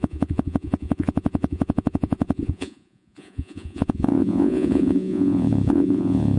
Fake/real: fake